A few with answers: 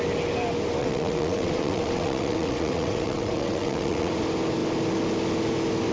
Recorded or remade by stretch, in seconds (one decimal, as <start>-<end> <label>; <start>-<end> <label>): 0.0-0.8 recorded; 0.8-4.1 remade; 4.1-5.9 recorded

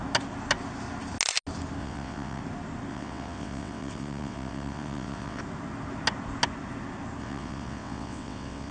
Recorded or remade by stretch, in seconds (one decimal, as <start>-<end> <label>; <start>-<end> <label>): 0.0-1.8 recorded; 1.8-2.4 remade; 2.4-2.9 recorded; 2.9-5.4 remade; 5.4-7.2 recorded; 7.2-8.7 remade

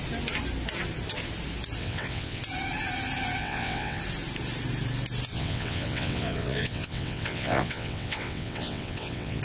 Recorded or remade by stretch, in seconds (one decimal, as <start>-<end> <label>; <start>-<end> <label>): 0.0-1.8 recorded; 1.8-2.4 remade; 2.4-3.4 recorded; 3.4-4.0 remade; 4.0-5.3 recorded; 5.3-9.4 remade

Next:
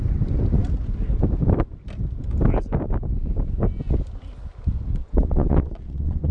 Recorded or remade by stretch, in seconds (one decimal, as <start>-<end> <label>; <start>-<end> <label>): 0.0-5.0 recorded; 5.0-6.3 remade